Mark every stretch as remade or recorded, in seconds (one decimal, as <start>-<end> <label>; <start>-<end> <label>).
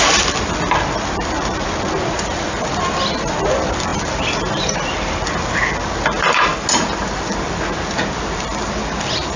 0.0-6.5 remade; 6.5-7.9 recorded; 7.9-9.4 remade